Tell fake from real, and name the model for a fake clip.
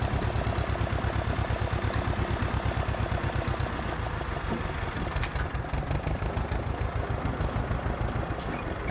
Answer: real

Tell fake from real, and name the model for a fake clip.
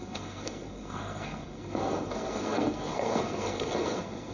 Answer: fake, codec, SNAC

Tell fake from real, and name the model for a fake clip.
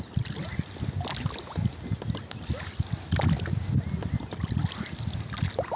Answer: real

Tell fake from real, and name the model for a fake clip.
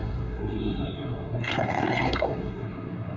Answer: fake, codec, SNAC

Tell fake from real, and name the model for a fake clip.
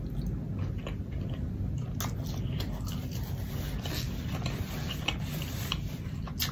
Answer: real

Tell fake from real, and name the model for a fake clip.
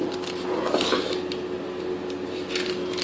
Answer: real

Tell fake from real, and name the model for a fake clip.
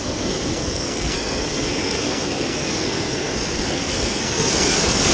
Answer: fake, codec, SNAC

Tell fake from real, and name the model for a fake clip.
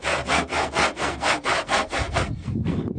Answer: fake, codec, SNAC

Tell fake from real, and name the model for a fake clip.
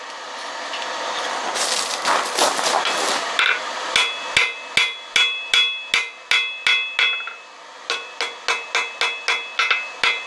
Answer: real